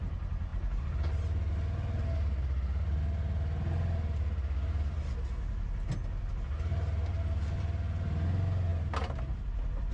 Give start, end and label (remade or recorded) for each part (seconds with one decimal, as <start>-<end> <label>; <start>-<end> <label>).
0.0-9.9 recorded